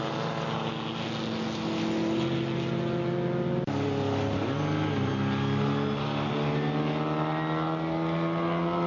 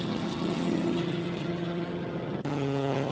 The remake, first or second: second